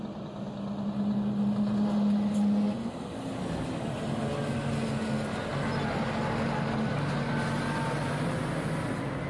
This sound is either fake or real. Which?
real